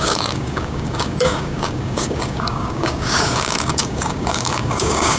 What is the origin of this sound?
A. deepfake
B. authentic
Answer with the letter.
A